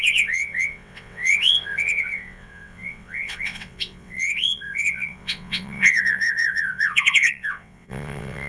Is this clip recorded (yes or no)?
no